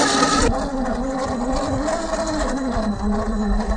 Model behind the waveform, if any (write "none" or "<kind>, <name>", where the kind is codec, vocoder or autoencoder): none